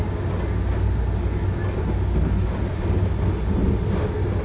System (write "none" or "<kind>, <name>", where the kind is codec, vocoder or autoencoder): none